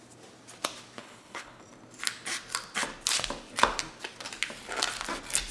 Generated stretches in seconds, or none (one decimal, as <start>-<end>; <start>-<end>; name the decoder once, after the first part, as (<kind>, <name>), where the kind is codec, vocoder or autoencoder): 1.0-1.6 (codec, HILCodec)